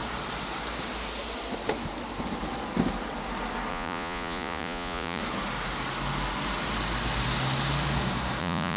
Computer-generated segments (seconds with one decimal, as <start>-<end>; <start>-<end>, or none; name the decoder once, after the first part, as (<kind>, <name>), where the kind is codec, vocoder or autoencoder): 3.7-5.2 (vocoder, Vocos); 8.4-8.8